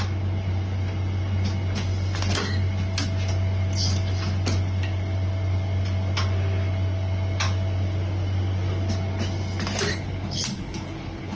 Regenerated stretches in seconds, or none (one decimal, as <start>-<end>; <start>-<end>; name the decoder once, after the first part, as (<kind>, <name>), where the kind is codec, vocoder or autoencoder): 9.9-11.4 (codec, HILCodec)